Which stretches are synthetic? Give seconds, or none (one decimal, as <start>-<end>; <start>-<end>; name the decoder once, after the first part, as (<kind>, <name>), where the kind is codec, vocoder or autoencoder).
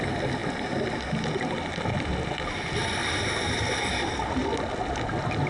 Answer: none